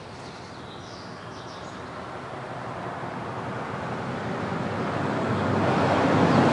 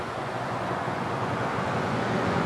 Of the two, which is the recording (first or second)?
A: first